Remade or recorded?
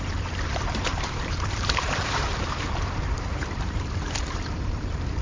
remade